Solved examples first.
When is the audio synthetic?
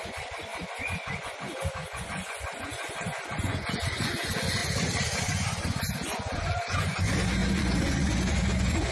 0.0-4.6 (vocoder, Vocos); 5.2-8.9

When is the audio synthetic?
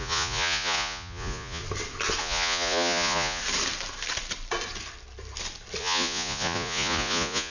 0.0-1.6 (vocoder, Vocos); 2.2-3.4; 5.8-7.5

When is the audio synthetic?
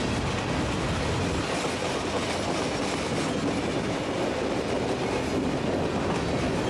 none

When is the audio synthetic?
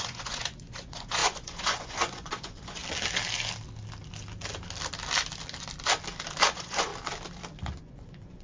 0.0-2.8 (vocoder, Vocos); 6.5-6.9; 7.8-8.4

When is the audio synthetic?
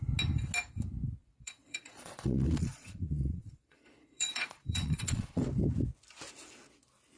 1.2-5.4 (vocoder, Vocos)